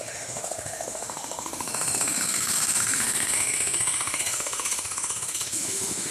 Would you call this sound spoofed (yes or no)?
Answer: yes